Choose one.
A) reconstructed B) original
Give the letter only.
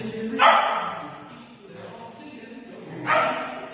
B